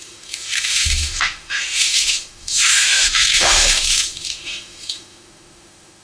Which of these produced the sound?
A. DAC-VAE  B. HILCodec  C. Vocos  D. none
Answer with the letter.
A